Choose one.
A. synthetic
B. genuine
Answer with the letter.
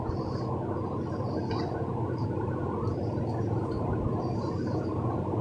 B